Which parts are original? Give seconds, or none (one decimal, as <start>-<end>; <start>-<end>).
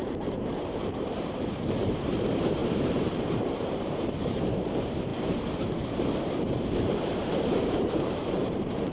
none